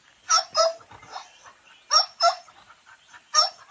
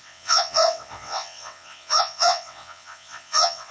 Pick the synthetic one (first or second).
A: second